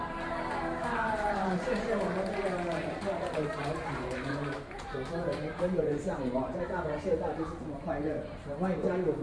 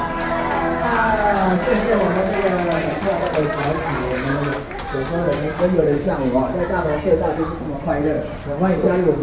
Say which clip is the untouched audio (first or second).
second